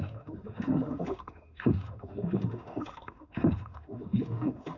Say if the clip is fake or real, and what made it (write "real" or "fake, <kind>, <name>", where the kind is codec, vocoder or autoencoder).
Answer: fake, autoencoder, DAC-VAE